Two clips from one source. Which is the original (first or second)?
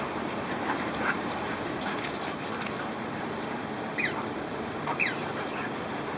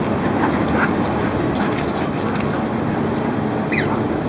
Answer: second